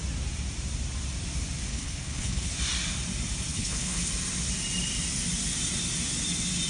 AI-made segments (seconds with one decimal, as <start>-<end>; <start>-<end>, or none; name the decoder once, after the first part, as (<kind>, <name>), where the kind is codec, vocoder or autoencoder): 1.7-2.5 (codec, HILCodec); 3.5-4.1

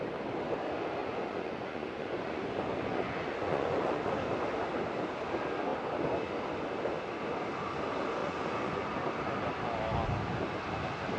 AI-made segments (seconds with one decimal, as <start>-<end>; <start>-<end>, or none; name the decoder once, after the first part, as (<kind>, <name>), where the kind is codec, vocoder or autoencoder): 1.0-4.1 (vocoder, Vocos); 8.2-8.9

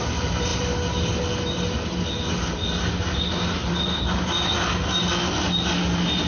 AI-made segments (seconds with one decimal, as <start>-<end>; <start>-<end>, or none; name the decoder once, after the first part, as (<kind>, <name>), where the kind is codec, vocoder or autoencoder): none

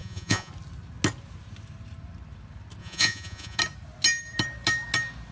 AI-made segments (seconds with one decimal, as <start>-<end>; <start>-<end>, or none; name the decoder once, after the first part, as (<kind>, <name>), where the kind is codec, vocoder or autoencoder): 0.0-0.5 (vocoder, Vocos); 2.8-3.6

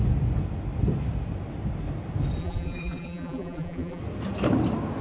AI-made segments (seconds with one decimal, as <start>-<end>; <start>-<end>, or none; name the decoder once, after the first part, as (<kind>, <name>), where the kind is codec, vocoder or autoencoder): 2.4-4.0 (vocoder, BigVGAN v2)

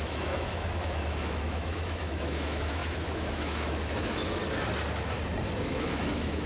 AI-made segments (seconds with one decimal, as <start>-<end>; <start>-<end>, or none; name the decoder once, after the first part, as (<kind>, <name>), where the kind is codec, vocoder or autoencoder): 0.0-4.4 (autoencoder, DAC-VAE); 5.6-6.5

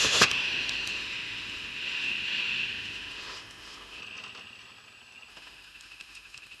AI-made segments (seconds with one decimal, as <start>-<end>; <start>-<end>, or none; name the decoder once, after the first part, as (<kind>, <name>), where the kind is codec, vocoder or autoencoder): 0.0-4.0 (autoencoder, DAC-VAE); 5.3-6.6

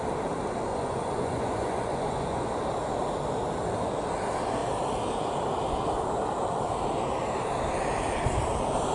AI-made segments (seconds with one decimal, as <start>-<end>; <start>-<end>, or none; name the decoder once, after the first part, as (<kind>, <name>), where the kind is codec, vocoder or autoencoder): 0.7-2.5 (vocoder, Vocos)